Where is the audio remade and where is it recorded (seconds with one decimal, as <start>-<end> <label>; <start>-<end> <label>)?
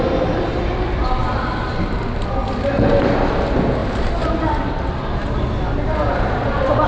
0.0-3.8 recorded; 3.8-4.8 remade; 4.8-6.9 recorded